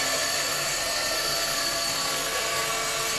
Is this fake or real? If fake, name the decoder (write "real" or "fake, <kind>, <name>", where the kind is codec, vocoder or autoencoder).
fake, codec, SNAC